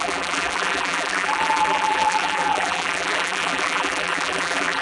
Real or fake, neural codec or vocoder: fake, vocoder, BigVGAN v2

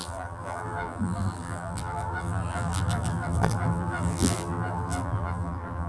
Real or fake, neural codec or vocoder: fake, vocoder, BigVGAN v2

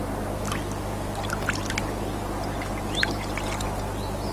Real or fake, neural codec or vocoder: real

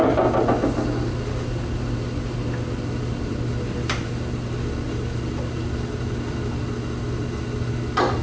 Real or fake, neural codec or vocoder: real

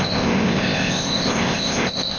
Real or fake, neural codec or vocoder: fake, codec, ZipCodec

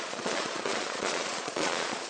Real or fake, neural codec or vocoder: fake, vocoder, Vocos